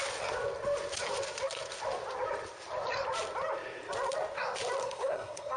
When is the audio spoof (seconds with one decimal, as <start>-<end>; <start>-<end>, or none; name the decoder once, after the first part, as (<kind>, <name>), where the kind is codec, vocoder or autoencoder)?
4.8-5.6 (codec, SNAC)